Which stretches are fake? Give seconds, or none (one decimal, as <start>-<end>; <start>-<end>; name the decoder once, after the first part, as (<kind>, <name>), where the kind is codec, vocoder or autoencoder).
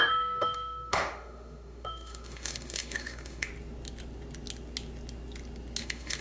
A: 0.0-3.5 (autoencoder, DAC-VAE); 5.8-6.2